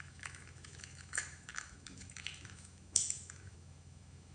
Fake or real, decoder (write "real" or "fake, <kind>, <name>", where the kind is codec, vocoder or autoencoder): fake, autoencoder, DAC-VAE